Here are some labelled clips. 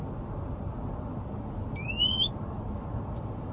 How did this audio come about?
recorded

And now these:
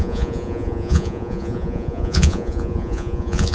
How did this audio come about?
remade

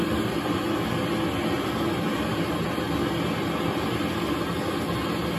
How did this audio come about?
recorded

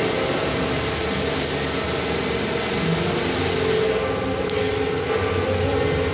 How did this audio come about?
recorded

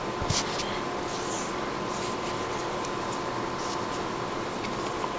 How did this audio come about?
recorded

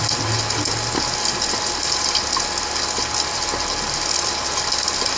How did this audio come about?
recorded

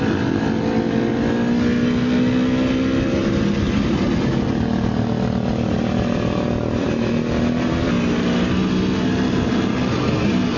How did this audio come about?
recorded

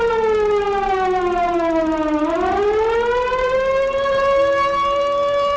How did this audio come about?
recorded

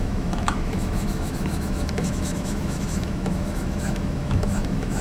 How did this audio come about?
remade